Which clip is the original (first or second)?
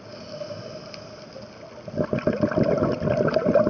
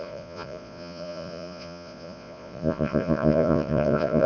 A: first